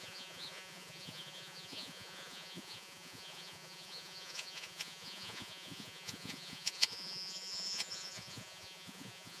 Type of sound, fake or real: fake